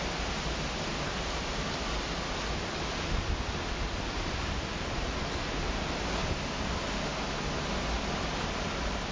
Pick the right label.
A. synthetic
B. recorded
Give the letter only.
B